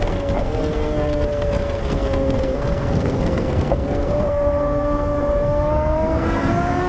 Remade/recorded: remade